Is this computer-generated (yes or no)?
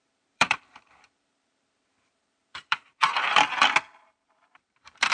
yes